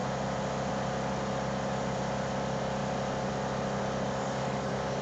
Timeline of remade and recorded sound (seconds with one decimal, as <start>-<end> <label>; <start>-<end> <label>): 0.0-4.2 recorded; 4.2-5.0 remade